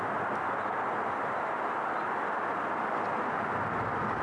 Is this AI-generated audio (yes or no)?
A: no